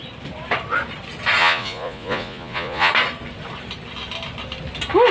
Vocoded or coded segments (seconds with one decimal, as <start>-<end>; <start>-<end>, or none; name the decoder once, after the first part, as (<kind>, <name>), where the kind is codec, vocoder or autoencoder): 1.4-2.9 (vocoder, Vocos)